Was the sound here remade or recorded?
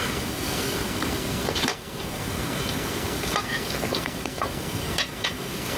remade